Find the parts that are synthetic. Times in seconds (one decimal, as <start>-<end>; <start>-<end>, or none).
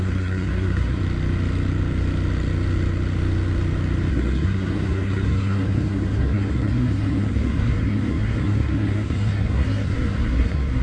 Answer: 0.0-1.0; 4.1-10.8